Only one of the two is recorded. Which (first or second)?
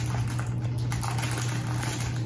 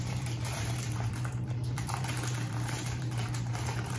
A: first